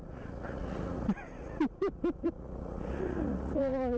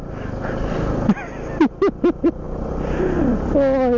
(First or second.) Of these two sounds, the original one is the second